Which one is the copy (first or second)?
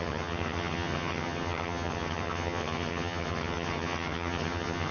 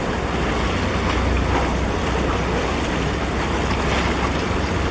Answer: first